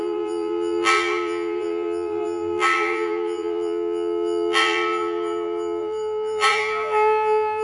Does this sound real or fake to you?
fake